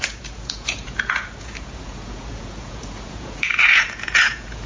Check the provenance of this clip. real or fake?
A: fake